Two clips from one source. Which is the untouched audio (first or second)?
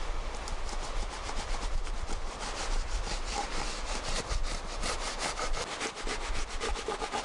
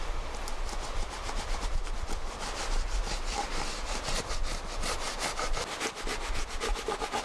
second